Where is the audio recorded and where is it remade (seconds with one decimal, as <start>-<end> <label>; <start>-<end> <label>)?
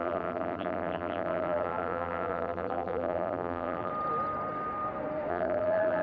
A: 0.0-3.9 remade; 3.9-5.3 recorded; 5.3-6.0 remade